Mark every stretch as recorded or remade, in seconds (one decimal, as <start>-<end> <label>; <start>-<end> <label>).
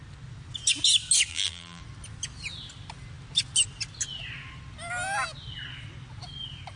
0.0-1.3 recorded; 1.3-1.8 remade; 1.8-6.8 recorded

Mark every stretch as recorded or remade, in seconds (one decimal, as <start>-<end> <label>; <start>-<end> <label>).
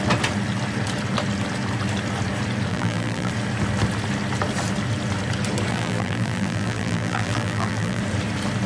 0.0-2.7 recorded; 2.7-3.3 remade; 3.3-5.7 recorded; 5.7-8.0 remade; 8.0-8.7 recorded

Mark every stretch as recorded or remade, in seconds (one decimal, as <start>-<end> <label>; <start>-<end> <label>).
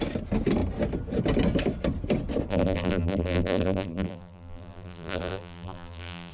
0.0-2.5 recorded; 2.5-6.3 remade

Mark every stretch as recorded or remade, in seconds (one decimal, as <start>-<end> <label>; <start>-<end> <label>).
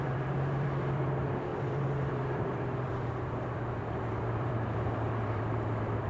0.0-6.1 remade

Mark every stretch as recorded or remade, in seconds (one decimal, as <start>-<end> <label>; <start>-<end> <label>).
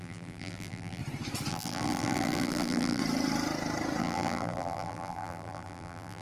0.0-1.0 remade; 1.0-1.5 recorded; 1.5-3.0 remade; 3.0-4.0 recorded; 4.0-6.2 remade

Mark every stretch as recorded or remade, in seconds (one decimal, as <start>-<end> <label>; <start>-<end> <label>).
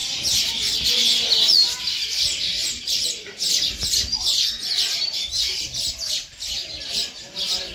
0.0-2.6 recorded; 2.6-3.3 remade; 3.3-7.7 recorded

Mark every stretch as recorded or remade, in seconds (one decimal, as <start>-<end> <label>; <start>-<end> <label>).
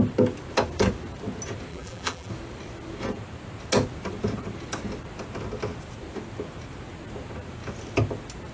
0.0-1.7 recorded; 1.7-2.3 remade; 2.3-8.5 recorded